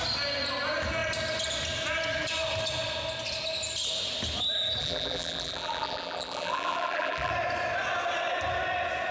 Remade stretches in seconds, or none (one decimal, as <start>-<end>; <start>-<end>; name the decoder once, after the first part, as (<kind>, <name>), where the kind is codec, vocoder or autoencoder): 4.8-7.3 (vocoder, BigVGAN v2)